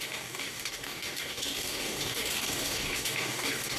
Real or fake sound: fake